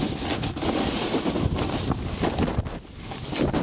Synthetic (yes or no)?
no